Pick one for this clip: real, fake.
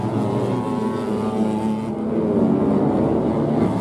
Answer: real